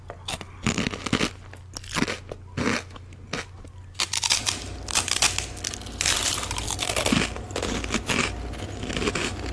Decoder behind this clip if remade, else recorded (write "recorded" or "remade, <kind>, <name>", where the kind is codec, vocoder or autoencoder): recorded